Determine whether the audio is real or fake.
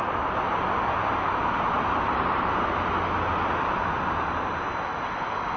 real